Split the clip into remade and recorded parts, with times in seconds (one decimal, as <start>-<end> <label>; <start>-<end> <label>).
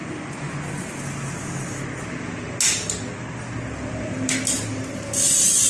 0.0-0.7 remade; 0.7-5.7 recorded